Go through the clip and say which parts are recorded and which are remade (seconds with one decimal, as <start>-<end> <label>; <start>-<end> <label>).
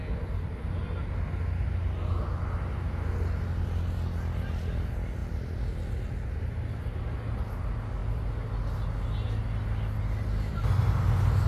0.0-11.5 recorded